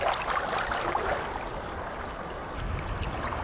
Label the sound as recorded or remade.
recorded